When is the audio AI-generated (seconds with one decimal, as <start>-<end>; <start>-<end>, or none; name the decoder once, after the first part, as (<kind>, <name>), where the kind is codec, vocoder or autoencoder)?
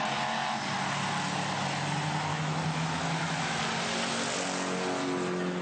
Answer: 2.3-3.6 (autoencoder, DAC-VAE)